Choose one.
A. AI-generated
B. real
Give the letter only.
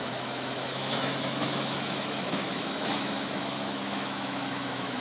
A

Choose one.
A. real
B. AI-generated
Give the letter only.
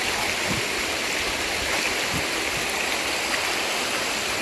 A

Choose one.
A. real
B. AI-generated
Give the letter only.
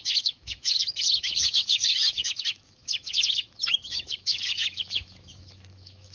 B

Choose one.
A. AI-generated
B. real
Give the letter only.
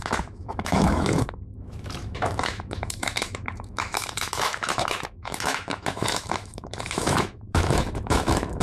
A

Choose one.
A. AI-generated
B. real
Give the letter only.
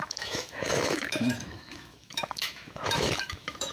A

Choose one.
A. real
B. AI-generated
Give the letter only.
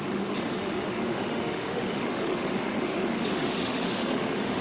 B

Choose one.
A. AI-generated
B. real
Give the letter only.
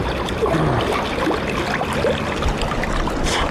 B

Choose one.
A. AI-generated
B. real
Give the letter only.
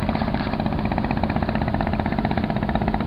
B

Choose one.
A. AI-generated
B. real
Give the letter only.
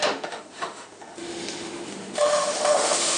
A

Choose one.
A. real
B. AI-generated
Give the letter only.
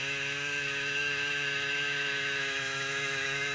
B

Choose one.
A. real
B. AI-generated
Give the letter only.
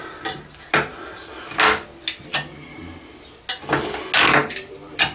A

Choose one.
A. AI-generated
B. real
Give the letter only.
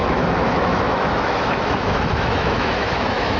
A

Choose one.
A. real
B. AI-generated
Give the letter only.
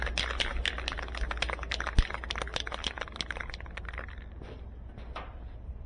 A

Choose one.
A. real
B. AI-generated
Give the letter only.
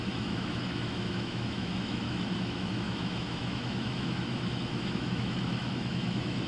B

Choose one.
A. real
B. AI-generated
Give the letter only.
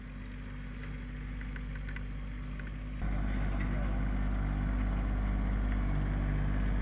A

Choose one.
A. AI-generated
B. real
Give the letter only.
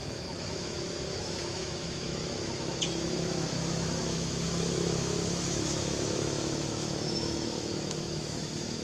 A